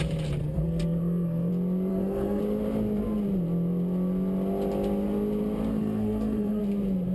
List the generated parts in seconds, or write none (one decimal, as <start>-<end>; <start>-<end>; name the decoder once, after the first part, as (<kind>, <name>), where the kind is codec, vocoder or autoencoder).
0.4-1.5 (codec, SNAC); 1.9-2.4; 5.7-6.6